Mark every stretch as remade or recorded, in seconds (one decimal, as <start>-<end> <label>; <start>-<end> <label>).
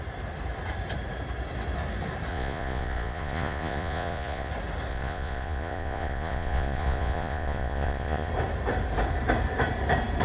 0.0-2.3 recorded; 2.3-4.5 remade; 4.5-4.9 recorded; 4.9-8.3 remade; 8.3-10.2 recorded